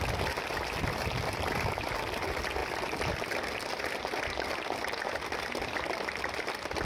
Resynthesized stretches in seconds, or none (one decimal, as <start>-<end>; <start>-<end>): 2.6-6.8